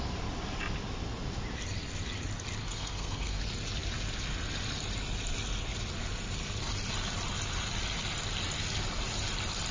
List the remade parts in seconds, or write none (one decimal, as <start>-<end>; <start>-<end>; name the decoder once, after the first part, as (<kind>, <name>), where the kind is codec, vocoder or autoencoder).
2.6-3.4 (codec, SNAC)